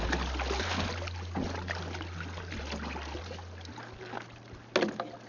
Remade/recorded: recorded